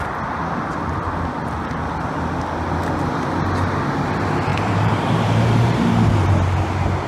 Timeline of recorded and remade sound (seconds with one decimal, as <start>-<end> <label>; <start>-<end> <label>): 0.0-4.5 recorded; 4.5-6.3 remade; 6.3-7.1 recorded